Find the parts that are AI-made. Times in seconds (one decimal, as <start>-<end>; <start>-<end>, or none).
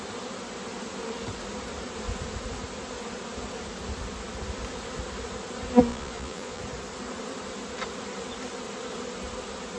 5.9-6.6